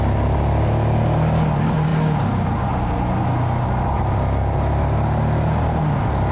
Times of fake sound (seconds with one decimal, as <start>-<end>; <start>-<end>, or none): none